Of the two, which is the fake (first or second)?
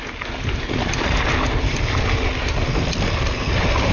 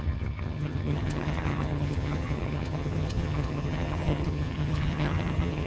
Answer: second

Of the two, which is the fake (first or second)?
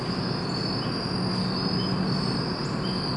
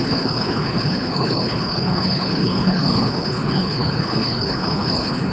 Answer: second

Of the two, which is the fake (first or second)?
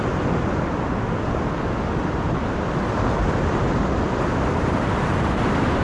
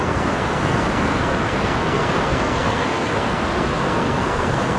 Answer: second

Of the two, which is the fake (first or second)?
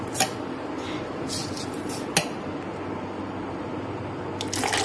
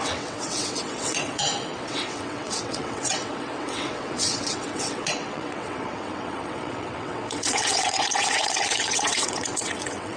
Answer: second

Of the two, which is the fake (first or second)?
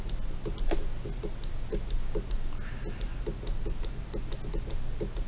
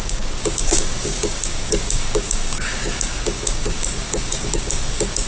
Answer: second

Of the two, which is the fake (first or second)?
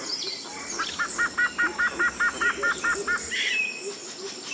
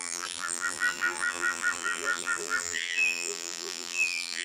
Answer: second